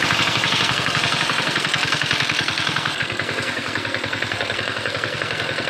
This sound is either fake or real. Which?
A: fake